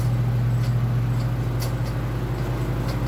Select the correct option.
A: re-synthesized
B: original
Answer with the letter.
B